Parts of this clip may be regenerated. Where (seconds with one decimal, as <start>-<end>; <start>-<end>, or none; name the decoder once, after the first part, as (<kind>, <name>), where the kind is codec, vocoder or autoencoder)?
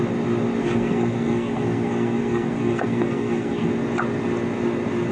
0.6-3.7 (codec, SNAC)